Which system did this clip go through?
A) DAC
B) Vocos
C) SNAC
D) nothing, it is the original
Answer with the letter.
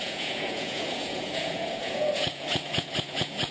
B